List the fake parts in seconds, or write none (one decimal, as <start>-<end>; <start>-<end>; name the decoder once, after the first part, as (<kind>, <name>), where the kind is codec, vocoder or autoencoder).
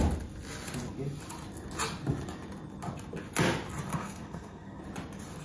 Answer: 3.9-4.8 (codec, SNAC)